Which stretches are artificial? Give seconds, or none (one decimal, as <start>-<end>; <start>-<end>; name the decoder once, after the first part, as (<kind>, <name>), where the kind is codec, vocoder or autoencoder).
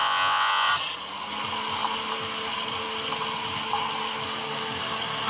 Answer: 0.0-0.7 (vocoder, Vocos)